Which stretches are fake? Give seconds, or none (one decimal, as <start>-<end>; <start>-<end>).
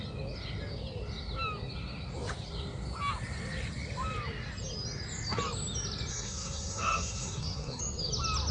6.1-7.8